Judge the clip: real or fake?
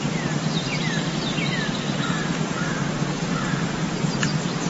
real